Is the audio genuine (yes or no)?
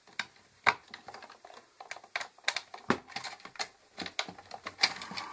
yes